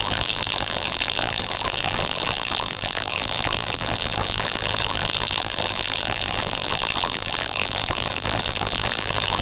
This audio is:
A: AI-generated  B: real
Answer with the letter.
A